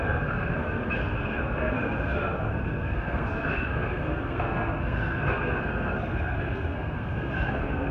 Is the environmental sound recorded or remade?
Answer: remade